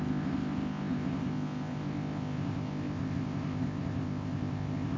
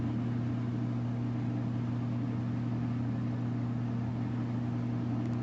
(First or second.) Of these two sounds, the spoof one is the first